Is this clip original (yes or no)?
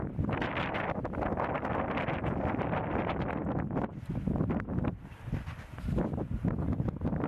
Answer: yes